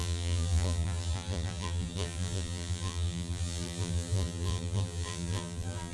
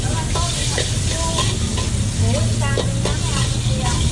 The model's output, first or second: first